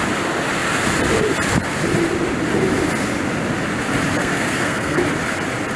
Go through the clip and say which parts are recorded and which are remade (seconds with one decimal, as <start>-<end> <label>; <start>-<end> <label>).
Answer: 0.0-4.2 recorded; 4.2-5.0 remade; 5.0-5.8 recorded